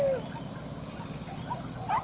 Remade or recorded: recorded